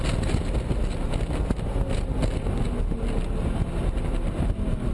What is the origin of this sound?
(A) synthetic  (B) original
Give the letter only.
B